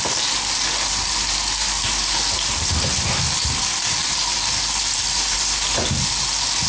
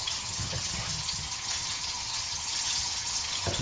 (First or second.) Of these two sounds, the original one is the first